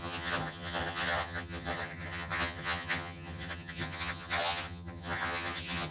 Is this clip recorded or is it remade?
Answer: remade